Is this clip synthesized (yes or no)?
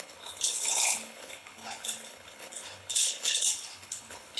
yes